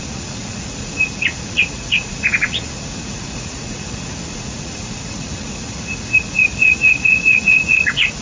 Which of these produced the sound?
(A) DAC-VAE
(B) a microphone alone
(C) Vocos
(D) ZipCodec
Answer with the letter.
C